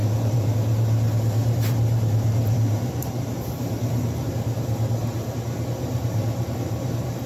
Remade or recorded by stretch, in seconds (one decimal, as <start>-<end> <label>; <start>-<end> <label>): 0.0-4.3 remade; 4.3-5.0 recorded; 5.0-7.3 remade